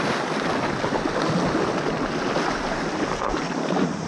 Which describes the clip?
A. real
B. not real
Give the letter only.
A